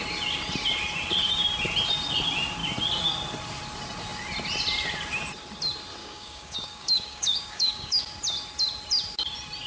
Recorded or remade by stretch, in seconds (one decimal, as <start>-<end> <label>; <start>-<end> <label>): 0.0-6.0 recorded; 6.0-8.0 remade; 8.0-9.7 recorded